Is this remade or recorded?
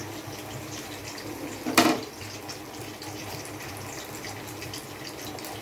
remade